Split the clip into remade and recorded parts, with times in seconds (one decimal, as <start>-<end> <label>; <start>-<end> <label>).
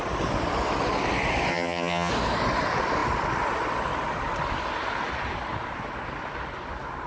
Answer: 0.0-1.5 recorded; 1.5-2.1 remade; 2.1-7.1 recorded